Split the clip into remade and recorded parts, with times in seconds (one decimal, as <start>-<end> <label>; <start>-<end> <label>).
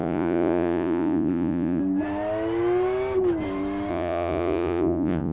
0.0-1.8 remade; 1.8-3.9 recorded; 3.9-5.3 remade